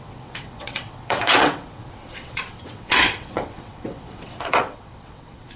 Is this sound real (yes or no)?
no